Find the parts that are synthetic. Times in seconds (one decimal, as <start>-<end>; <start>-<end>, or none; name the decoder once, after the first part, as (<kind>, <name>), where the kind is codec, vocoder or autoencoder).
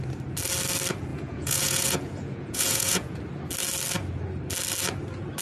1.1-3.2 (vocoder, Vocos)